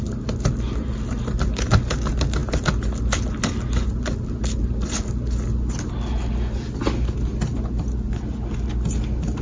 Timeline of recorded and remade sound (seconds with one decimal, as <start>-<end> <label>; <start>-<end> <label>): 0.0-7.3 recorded; 7.3-8.1 remade; 8.1-9.4 recorded